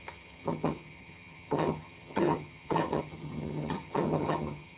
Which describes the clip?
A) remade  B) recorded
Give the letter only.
A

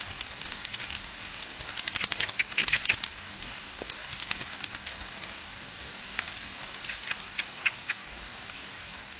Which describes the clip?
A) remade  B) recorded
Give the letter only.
A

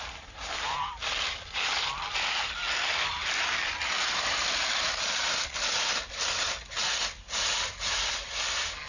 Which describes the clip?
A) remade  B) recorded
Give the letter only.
B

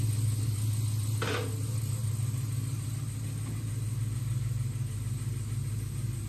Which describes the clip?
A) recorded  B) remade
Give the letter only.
A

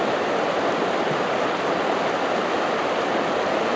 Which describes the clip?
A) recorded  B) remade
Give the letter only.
A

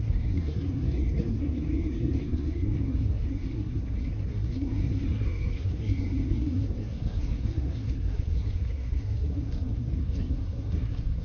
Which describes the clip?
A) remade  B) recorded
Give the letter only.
A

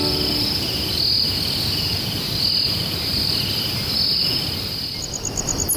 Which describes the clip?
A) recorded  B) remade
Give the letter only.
A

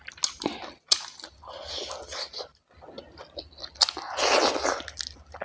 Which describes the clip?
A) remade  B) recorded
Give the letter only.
B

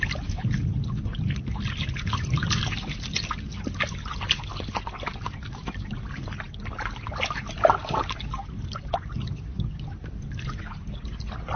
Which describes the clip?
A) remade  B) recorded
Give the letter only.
B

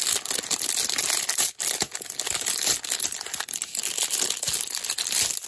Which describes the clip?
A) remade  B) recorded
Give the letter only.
B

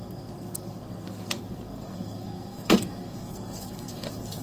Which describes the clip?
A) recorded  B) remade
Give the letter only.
B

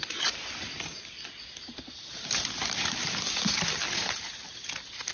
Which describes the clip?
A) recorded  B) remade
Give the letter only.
A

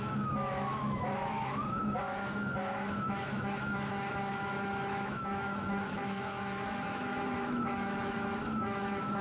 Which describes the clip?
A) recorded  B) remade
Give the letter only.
B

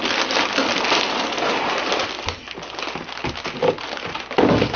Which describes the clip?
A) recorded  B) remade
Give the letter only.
A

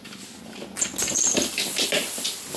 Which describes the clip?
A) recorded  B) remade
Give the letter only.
A